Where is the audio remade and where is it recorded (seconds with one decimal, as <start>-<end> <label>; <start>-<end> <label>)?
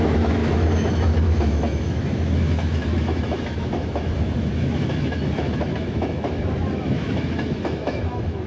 0.0-8.5 remade